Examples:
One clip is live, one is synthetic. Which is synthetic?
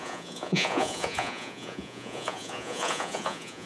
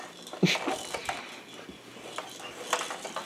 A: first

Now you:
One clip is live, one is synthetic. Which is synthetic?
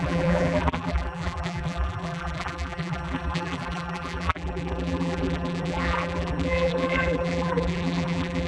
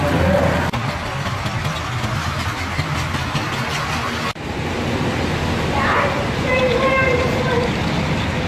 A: first